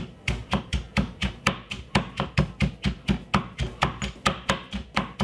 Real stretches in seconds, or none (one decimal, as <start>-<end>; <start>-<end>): 0.0-0.4; 1.5-5.2